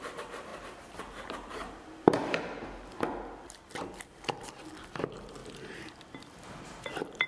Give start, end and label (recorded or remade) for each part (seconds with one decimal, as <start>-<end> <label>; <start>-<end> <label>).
0.0-5.4 remade; 5.4-6.6 recorded; 6.6-7.3 remade